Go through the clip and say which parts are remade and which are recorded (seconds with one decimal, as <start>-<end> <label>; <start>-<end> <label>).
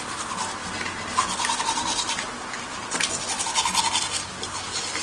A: 0.0-5.0 recorded